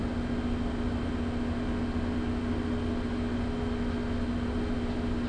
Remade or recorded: recorded